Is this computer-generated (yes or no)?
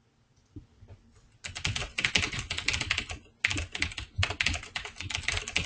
no